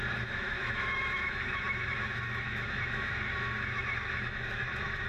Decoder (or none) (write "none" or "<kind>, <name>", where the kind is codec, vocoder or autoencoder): autoencoder, DAC-VAE